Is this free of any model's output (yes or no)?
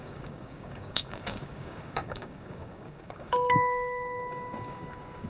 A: no